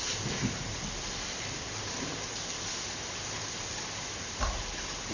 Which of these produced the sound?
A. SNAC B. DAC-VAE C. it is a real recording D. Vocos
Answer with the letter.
C